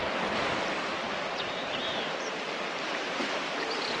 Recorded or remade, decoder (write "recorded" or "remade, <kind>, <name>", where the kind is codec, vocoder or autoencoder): remade, vocoder, BigVGAN v2